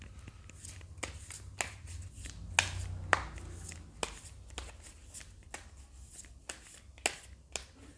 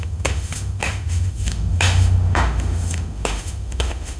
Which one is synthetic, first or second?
second